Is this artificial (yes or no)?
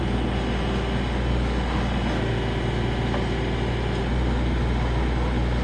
no